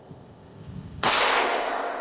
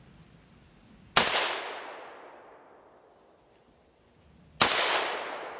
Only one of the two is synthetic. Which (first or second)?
first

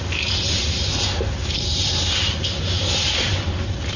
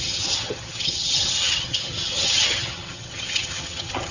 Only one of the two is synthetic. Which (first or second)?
second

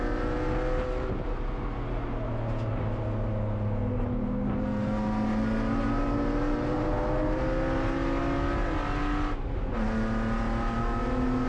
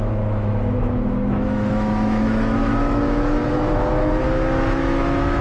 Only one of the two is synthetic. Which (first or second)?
second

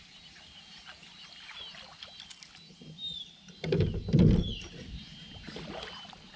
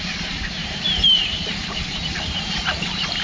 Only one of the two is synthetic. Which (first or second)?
second